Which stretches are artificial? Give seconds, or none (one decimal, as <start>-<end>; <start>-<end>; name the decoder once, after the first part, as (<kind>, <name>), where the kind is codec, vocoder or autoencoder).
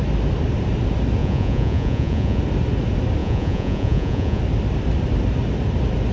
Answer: 1.2-2.4 (vocoder, Vocos); 3.2-4.4